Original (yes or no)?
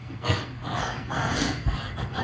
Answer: no